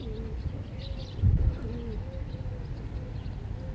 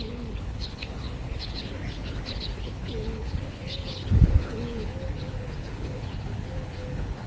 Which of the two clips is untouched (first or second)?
first